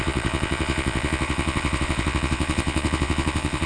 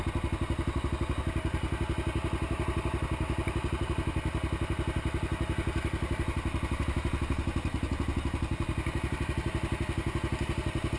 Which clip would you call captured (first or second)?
second